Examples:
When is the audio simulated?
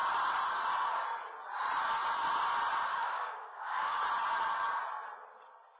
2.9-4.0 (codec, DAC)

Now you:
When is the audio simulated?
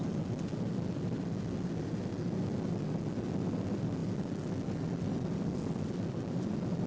none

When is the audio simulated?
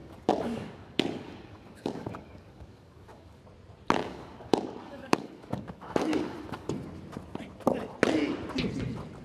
0.0-3.4 (codec, DAC); 4.0-6.7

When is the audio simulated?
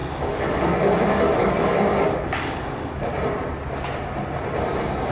0.0-3.1 (codec, DAC)